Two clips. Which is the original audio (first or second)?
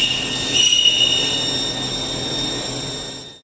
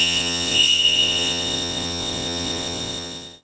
first